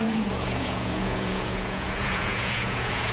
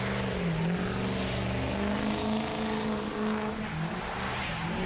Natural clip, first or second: second